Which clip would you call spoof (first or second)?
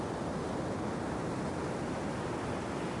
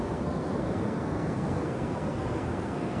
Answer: second